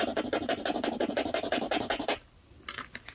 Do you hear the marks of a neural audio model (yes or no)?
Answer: no